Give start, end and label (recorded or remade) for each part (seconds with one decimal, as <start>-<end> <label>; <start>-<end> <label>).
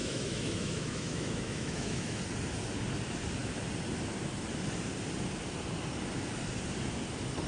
0.0-2.2 remade; 2.2-7.5 recorded